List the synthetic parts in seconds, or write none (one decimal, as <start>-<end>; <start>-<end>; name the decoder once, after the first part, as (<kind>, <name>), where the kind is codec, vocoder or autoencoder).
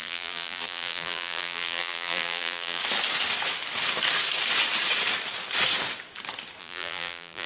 0.0-2.8 (vocoder, BigVGAN v2); 6.6-7.5